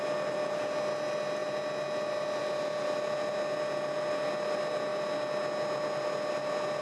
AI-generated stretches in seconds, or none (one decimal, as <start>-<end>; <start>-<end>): none